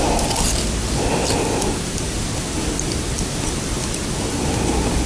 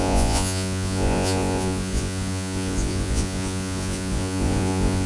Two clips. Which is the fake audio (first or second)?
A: second